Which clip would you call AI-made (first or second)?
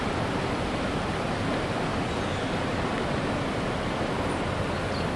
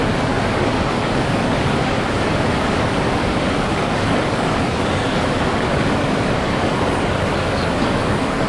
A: second